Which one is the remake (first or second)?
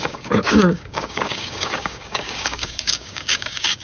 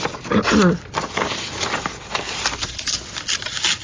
first